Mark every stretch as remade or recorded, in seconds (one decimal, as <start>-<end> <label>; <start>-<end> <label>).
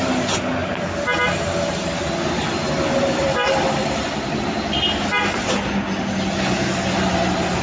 0.0-0.6 recorded; 0.6-4.4 remade; 4.4-7.6 recorded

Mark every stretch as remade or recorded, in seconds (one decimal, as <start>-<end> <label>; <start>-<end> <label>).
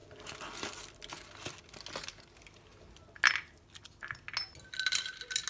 0.0-5.5 recorded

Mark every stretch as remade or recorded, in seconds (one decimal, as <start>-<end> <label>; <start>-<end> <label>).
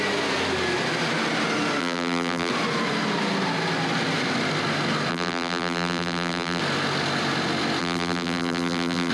0.0-1.8 recorded; 1.8-2.5 remade; 2.5-5.1 recorded; 5.1-6.6 remade; 6.6-7.8 recorded; 7.8-9.1 remade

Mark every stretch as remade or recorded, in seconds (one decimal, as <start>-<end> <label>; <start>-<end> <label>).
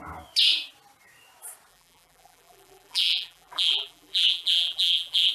0.0-1.7 recorded; 1.7-5.3 remade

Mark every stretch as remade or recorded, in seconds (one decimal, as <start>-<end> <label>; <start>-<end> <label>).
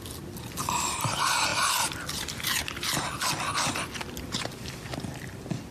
0.0-5.7 recorded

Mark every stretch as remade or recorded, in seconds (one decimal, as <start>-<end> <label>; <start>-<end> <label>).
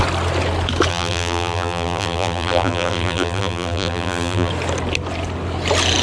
0.0-0.9 recorded; 0.9-4.5 remade; 4.5-6.0 recorded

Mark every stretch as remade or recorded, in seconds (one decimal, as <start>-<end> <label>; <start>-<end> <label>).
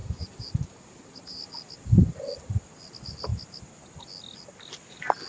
0.0-1.4 remade; 1.4-5.3 recorded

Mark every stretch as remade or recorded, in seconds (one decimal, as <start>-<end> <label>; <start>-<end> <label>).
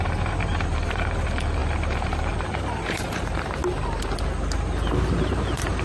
0.0-3.6 remade; 3.6-4.9 recorded; 4.9-5.8 remade